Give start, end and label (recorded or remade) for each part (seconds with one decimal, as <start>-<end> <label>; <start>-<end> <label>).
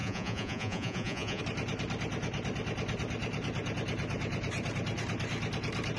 0.0-1.4 remade; 1.4-6.0 recorded